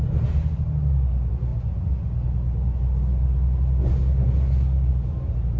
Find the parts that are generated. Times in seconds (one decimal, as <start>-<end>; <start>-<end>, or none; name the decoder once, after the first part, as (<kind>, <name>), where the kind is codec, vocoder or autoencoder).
none